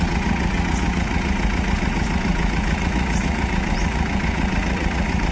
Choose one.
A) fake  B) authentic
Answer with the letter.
A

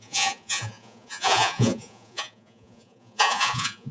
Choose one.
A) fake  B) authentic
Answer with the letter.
A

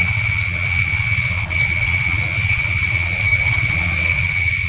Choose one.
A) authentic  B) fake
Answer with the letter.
B